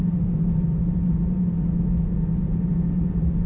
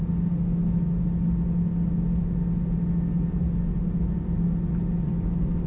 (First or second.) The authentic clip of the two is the second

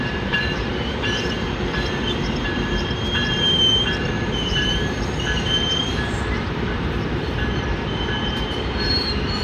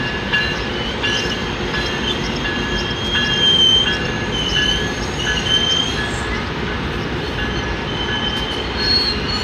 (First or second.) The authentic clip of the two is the second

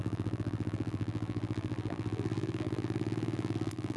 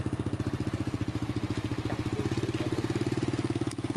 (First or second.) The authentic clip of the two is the second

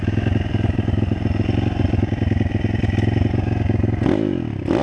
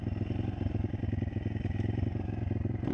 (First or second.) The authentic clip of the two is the first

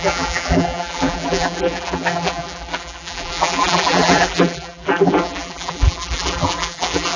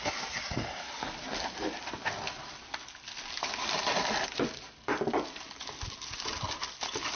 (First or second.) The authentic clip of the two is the second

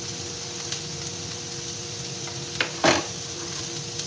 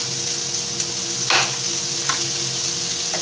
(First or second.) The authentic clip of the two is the second